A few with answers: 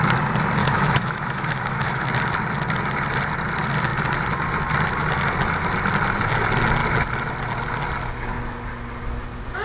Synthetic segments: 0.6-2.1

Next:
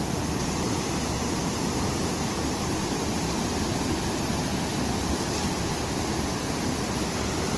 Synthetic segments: none

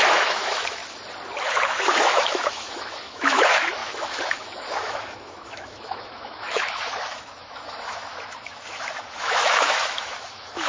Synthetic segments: 0.0-0.8; 1.4-10.7

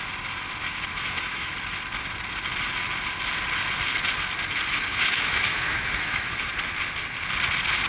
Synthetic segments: 0.9-1.5; 4.9-6.5

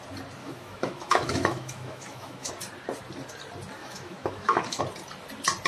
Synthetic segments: 0.4-2.5; 3.8-4.8

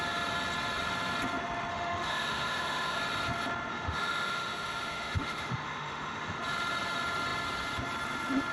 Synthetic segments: 1.7-3.0; 3.7-6.4

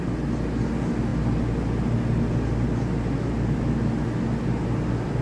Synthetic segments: none